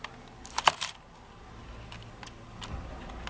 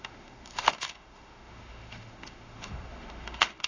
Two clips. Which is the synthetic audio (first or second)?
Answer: second